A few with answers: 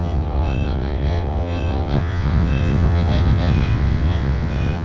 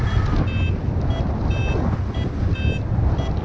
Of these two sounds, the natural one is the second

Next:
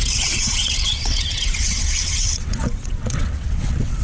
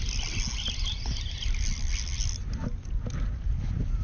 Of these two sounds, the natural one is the second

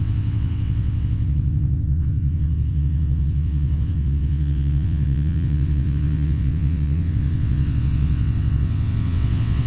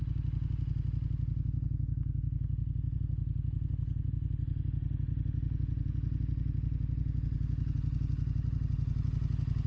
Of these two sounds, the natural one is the second